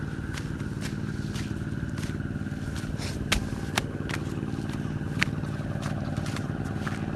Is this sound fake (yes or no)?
no